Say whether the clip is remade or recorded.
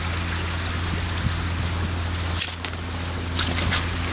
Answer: recorded